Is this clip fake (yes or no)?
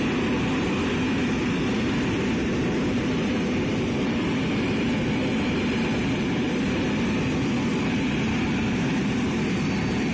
no